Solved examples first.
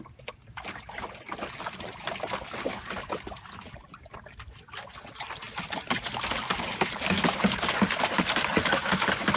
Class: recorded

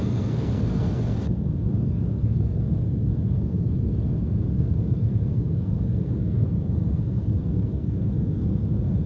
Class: remade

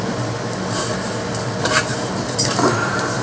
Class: recorded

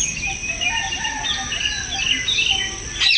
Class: recorded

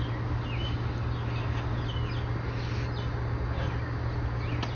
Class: recorded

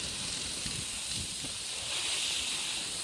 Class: recorded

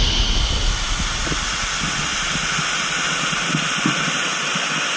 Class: recorded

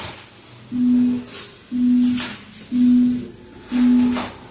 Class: recorded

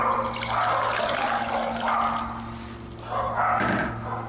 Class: recorded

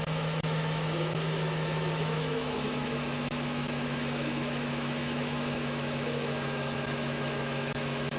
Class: remade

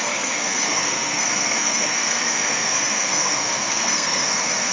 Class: remade